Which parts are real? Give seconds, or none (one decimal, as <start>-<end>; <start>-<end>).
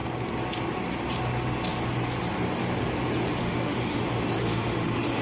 0.0-3.4; 4.0-4.4